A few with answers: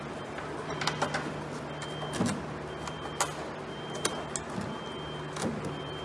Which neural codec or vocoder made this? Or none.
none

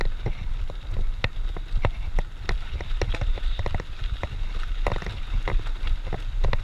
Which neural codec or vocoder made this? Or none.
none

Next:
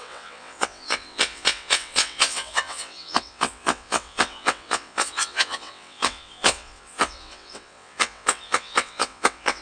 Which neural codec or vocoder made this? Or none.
vocoder, WaveNeXt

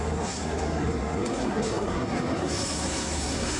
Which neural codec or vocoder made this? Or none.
codec, SNAC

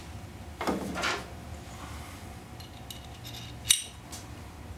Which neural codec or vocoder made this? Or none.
none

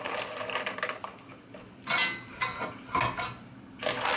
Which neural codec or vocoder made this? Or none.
none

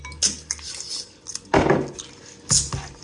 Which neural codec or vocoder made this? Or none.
none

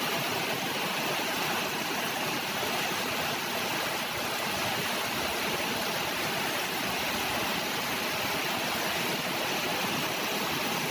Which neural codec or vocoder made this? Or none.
none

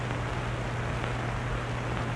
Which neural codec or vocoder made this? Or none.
none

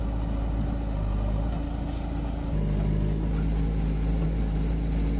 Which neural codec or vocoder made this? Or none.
none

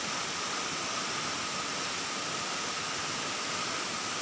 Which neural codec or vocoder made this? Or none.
none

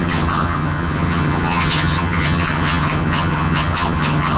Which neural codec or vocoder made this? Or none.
vocoder, HiFi-GAN